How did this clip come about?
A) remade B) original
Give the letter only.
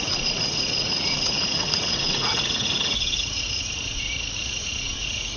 A